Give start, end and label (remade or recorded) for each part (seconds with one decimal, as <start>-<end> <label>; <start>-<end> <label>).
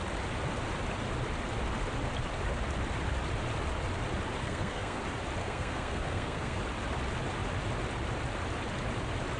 0.0-4.4 recorded; 4.4-5.0 remade; 5.0-5.4 recorded; 5.4-6.6 remade; 6.6-9.4 recorded